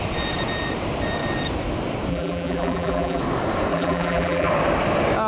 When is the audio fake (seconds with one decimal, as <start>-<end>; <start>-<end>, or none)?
2.1-3.2; 3.7-4.5